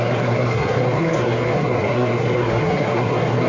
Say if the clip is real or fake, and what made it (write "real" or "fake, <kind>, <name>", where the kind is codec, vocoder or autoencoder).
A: fake, codec, SNAC